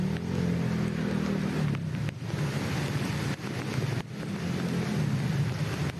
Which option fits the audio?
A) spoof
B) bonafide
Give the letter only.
B